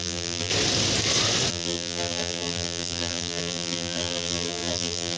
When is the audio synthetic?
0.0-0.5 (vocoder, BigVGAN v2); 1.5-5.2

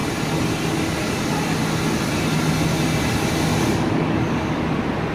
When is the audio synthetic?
3.5-4.6 (codec, DAC)